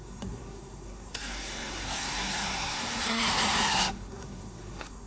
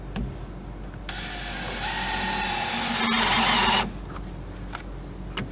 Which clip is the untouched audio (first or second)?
second